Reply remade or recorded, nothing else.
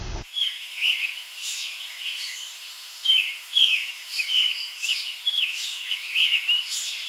remade